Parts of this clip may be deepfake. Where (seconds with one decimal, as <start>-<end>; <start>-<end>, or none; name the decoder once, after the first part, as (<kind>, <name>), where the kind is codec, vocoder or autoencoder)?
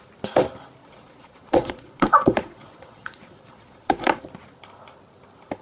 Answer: 0.8-4.2 (vocoder, Vocos)